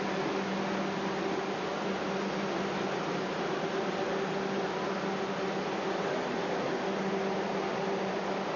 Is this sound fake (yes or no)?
no